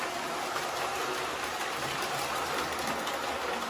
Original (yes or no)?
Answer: yes